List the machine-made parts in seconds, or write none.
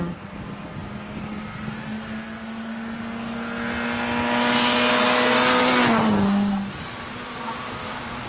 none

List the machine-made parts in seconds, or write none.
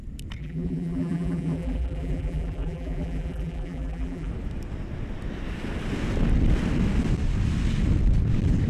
0.4-4.3 (vocoder, BigVGAN v2)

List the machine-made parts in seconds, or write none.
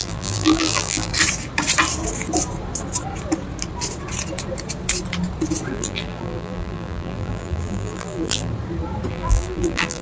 0.0-1.1 (vocoder, BigVGAN v2); 5.7-8.5; 9.1-10.0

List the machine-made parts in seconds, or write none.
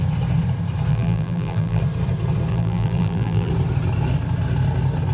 0.9-1.8 (vocoder, BigVGAN v2); 2.5-3.5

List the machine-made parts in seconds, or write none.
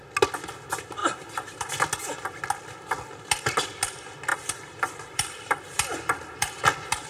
1.0-1.7 (vocoder, BigVGAN v2); 4.3-6.6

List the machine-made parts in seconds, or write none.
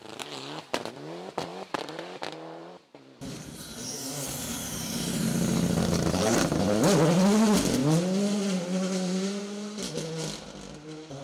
2.6-3.6 (vocoder, BigVGAN v2); 4.5-6.5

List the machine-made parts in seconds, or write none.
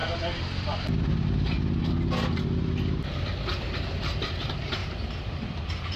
3.6-4.8 (vocoder, BigVGAN v2); 5.6-6.0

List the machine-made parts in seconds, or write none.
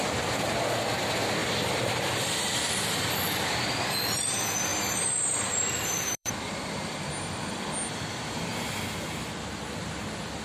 1.4-2.7 (vocoder, BigVGAN v2); 4.7-7.1